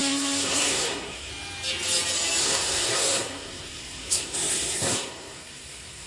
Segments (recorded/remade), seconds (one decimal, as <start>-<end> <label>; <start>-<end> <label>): 0.0-1.3 remade; 1.3-2.4 recorded; 2.4-6.1 remade